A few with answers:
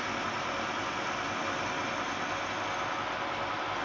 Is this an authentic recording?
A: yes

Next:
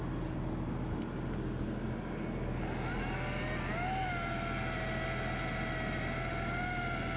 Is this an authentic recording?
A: yes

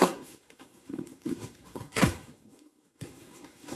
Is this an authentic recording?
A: no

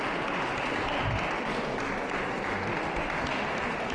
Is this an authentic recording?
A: yes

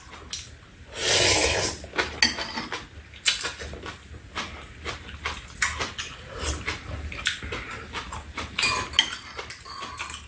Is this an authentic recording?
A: yes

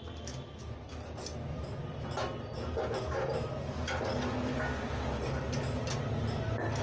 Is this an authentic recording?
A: yes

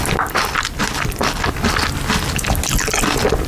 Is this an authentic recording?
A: yes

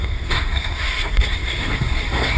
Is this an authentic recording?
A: no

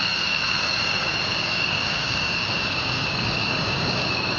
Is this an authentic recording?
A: no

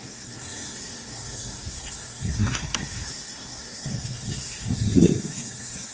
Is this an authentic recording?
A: no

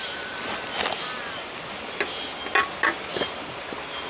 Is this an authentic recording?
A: yes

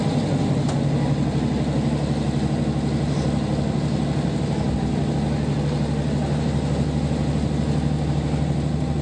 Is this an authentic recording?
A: yes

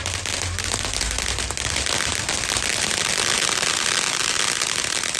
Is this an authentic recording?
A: yes